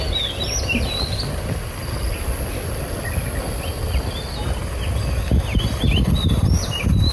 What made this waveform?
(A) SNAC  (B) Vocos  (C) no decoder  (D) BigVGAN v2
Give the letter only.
C